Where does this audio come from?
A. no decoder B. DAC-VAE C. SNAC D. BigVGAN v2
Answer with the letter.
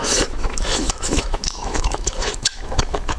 B